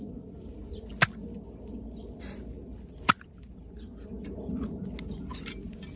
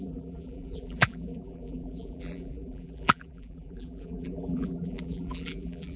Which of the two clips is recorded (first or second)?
first